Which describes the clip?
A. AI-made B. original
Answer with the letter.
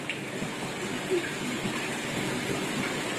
B